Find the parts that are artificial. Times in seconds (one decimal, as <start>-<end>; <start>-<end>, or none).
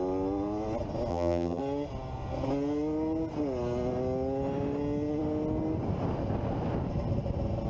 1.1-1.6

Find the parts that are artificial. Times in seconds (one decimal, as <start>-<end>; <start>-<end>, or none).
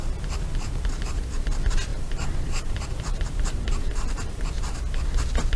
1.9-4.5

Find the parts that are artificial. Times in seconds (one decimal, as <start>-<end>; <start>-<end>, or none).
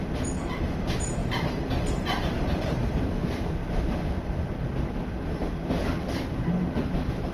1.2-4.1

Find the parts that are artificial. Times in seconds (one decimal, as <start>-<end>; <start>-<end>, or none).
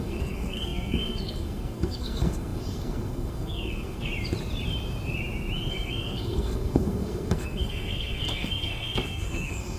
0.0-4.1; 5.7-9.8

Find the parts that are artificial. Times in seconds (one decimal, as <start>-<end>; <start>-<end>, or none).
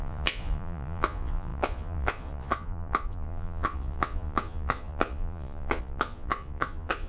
0.0-7.1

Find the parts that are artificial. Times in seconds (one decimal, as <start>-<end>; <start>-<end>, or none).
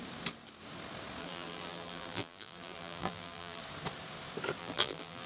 1.2-3.6; 4.6-5.3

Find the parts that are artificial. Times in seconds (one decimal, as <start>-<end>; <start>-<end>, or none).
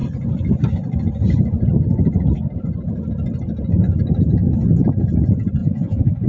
5.6-6.3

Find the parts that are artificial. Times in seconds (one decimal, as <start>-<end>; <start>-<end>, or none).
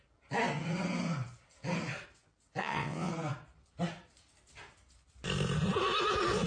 2.6-3.1